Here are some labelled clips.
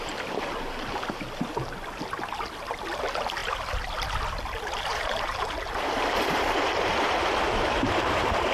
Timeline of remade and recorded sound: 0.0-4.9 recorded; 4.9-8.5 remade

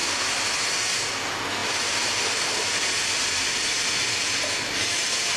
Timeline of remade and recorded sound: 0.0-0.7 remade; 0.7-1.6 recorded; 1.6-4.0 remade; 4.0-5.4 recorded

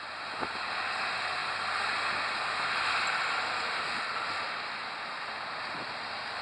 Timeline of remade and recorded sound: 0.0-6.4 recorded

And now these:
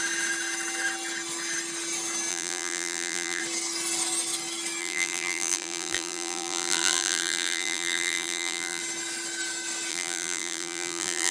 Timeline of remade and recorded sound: 0.0-2.3 recorded; 2.3-3.4 remade; 3.4-4.8 recorded; 4.8-8.8 remade; 8.8-9.9 recorded; 9.9-11.3 remade